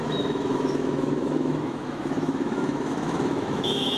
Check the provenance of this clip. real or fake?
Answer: fake